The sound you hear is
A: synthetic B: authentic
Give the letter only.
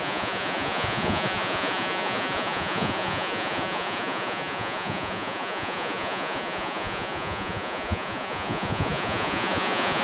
A